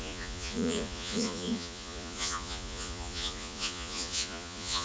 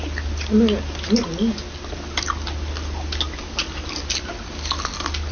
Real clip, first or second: second